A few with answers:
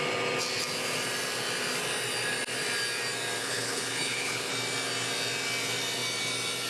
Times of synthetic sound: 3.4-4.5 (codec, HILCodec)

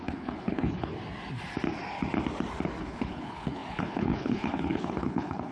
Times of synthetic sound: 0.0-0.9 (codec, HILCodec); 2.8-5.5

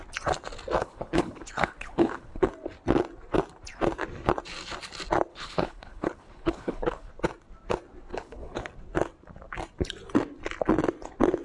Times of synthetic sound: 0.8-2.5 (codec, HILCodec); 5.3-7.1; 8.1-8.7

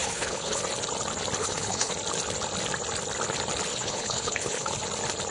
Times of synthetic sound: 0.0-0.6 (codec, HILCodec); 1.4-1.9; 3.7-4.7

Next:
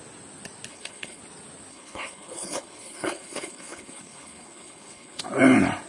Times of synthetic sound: 0.7-1.2 (codec, HILCodec); 1.7-5.2

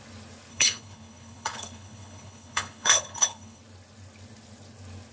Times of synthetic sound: 0.5-3.6 (codec, HILCodec)

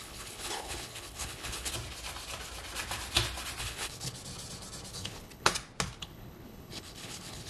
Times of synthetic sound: 0.0-1.7 (codec, HILCodec); 3.6-4.1; 4.9-5.5; 6.0-7.5

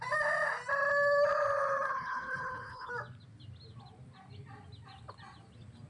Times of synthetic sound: 1.9-2.9 (codec, HILCodec)